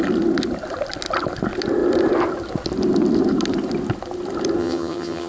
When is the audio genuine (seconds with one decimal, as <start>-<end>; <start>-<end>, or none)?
0.0-4.6